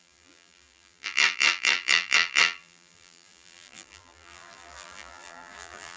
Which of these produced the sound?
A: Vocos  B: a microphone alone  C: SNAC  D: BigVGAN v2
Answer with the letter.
D